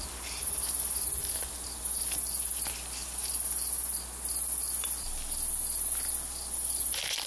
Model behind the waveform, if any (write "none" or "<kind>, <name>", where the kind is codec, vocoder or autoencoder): none